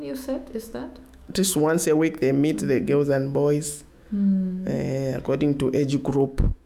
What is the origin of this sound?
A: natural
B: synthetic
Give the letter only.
B